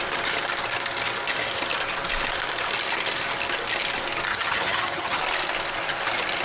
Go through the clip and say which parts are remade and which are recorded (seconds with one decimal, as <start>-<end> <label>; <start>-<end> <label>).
0.0-4.3 recorded; 4.3-5.2 remade; 5.2-6.4 recorded